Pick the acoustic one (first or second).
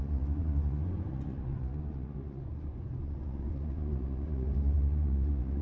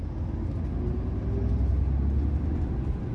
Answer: second